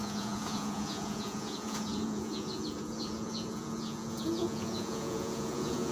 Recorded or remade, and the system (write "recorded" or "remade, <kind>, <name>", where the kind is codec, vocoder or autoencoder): remade, vocoder, Vocos